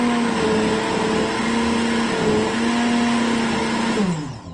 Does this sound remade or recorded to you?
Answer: recorded